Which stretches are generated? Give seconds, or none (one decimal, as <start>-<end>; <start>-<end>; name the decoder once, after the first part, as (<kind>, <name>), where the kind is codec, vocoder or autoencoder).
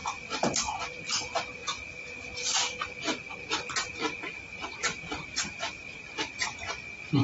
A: 4.2-6.5 (vocoder, BigVGAN v2)